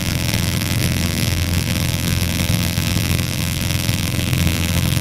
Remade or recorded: remade